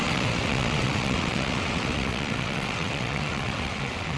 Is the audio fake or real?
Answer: fake